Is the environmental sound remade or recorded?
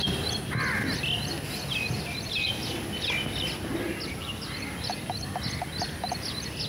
recorded